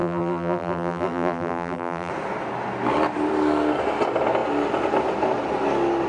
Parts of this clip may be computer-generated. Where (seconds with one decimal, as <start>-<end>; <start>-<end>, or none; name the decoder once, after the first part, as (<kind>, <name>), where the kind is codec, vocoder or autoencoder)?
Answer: 0.0-2.1 (vocoder, BigVGAN v2)